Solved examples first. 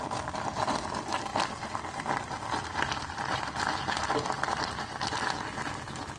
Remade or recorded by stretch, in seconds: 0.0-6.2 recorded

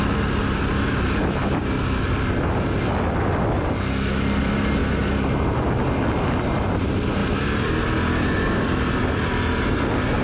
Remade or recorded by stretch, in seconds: 0.0-10.2 recorded